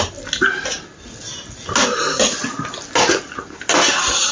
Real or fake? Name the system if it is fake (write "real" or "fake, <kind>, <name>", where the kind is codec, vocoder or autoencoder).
real